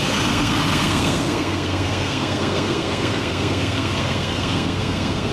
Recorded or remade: remade